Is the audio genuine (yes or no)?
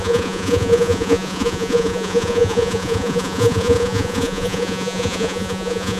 no